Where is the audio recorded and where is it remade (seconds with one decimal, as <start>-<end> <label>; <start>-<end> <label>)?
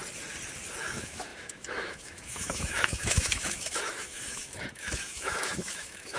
0.0-0.8 recorded; 0.8-6.2 remade